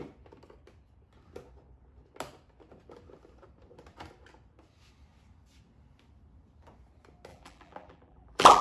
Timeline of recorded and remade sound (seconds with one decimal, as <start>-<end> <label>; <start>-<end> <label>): 0.0-7.3 recorded; 7.3-8.6 remade